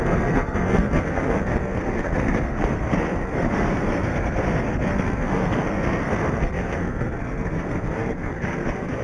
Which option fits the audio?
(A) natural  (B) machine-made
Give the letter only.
B